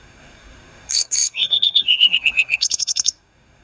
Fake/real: fake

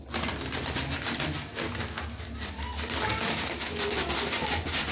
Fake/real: real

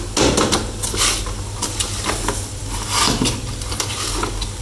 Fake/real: real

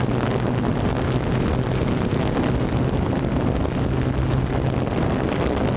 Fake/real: real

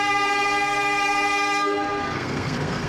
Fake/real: fake